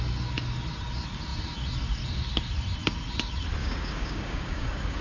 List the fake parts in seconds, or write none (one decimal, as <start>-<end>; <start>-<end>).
3.6-5.0

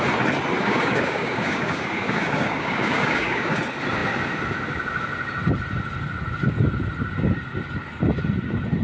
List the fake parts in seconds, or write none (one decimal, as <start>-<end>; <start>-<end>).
0.6-3.6

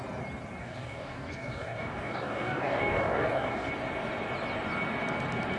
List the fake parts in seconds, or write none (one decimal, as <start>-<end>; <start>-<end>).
0.6-3.7

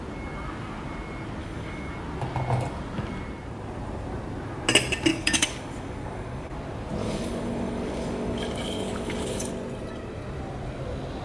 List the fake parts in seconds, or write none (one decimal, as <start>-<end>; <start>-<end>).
1.4-1.9; 5.1-6.5; 7.0-9.5

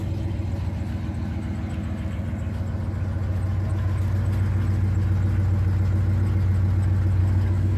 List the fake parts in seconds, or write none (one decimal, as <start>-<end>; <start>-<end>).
7.2-7.8